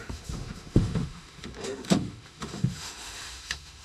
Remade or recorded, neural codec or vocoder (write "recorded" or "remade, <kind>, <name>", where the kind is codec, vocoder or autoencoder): remade, autoencoder, DAC-VAE